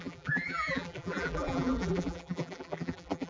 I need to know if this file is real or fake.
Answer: fake